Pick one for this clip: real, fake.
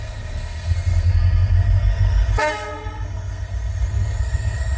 fake